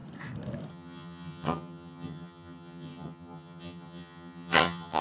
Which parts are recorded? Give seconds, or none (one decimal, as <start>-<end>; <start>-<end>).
0.0-0.7